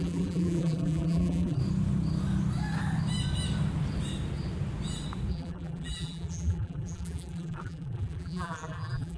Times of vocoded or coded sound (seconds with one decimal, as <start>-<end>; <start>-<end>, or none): 0.0-1.6; 5.3-9.2